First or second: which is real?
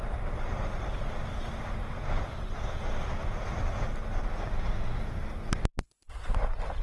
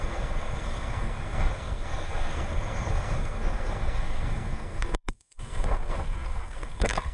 first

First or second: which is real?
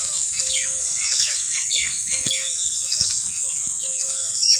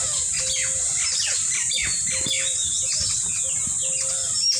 second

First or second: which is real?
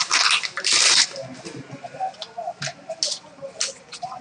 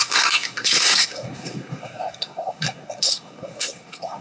first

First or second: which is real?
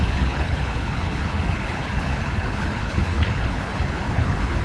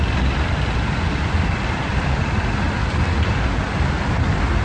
second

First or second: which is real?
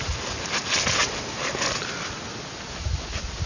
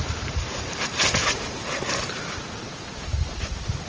first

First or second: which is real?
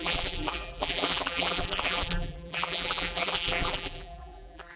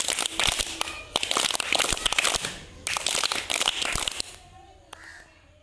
second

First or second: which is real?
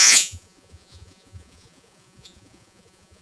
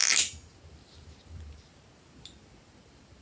second